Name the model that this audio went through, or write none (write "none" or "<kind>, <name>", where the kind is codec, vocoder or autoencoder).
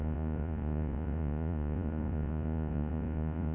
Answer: vocoder, Vocos